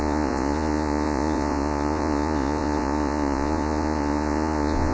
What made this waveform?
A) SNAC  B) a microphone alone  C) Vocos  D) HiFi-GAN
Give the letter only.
C